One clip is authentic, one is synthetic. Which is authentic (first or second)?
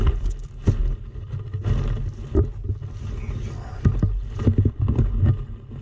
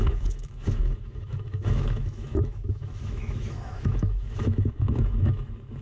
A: first